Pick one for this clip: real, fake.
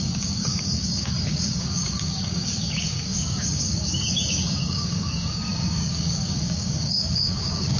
fake